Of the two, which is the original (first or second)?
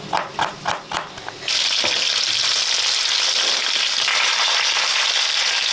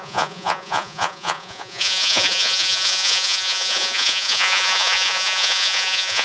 first